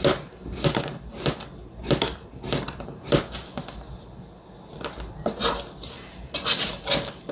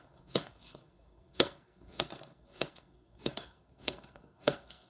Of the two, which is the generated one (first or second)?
second